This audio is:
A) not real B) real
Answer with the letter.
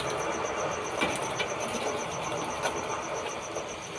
B